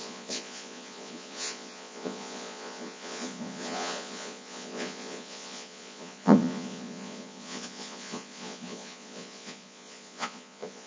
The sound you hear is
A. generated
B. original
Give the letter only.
A